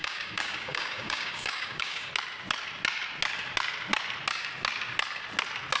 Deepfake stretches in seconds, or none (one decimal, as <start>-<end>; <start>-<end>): 0.0-2.1